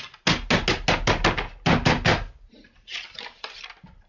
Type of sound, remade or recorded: recorded